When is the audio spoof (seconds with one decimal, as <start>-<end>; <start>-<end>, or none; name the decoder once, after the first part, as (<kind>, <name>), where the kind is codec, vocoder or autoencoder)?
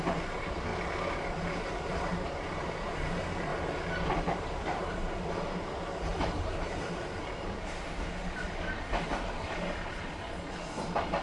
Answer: 0.0-0.7 (vocoder, BigVGAN v2); 1.6-3.5; 4.1-11.2